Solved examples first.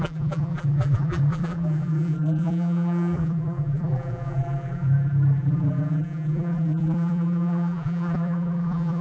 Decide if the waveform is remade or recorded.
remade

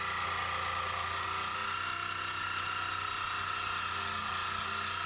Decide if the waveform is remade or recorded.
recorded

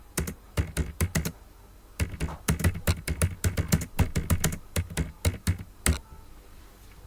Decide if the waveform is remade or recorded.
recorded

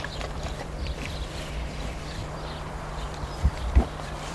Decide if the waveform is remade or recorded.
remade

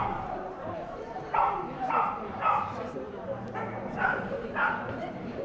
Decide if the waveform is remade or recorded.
remade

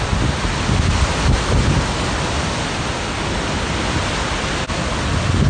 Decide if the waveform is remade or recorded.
recorded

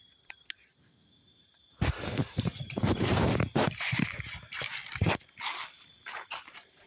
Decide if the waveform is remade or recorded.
remade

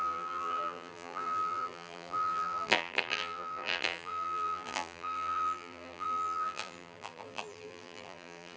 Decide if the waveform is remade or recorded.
remade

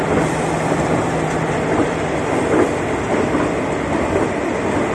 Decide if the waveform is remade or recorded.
remade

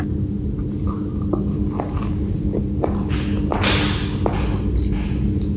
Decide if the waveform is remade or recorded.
recorded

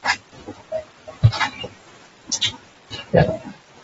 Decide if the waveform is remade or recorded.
recorded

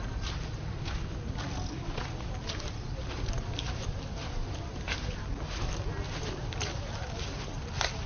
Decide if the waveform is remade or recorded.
recorded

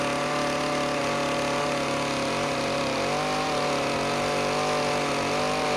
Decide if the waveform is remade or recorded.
recorded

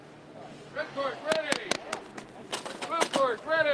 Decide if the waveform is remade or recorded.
recorded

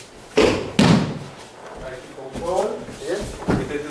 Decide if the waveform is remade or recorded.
recorded